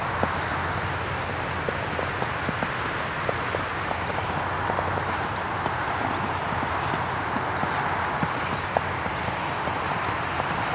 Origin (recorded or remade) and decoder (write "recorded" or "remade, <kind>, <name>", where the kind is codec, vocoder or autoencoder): recorded